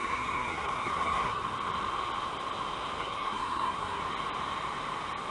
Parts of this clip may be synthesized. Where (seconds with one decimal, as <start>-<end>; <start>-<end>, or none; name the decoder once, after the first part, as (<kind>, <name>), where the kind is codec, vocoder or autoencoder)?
0.0-1.4 (codec, SNAC); 3.0-4.0